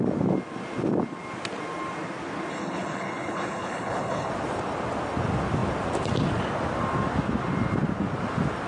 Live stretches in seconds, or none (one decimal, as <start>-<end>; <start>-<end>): 0.0-2.5; 4.3-8.7